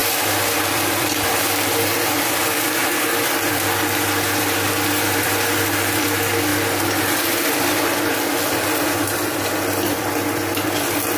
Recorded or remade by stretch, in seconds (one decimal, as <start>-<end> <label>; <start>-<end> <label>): 0.0-0.6 recorded; 0.6-2.8 remade; 2.8-3.3 recorded; 3.3-11.2 remade